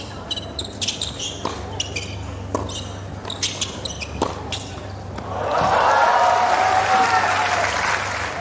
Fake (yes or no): no